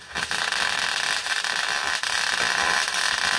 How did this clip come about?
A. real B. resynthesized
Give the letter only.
A